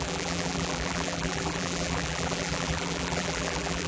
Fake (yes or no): yes